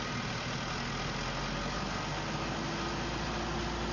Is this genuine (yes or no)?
yes